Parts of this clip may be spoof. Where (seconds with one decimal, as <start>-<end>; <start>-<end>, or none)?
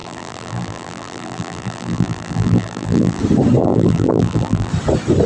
0.0-3.2; 3.6-4.7